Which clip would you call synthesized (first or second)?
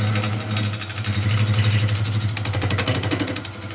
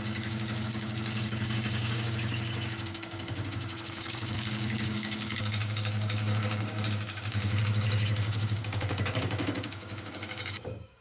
second